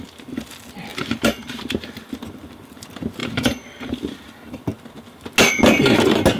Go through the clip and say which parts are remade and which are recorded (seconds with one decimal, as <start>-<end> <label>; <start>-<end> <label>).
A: 0.0-0.9 recorded; 0.9-2.1 remade; 2.1-3.2 recorded; 3.2-3.9 remade; 3.9-6.4 recorded